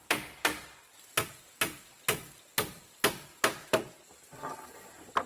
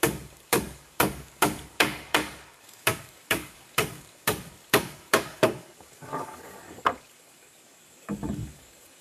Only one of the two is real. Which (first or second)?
first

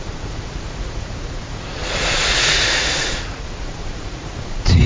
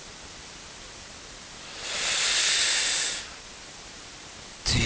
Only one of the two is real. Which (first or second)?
second